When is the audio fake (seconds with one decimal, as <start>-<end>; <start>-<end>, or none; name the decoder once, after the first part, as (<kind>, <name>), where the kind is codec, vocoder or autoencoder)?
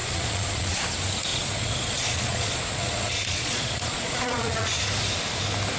0.0-0.8 (vocoder, Vocos); 1.3-4.8